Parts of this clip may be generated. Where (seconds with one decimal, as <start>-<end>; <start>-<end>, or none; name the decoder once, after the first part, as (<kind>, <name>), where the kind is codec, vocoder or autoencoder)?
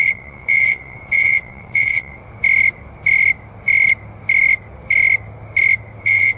0.0-2.2 (vocoder, WaveNeXt); 6.0-6.4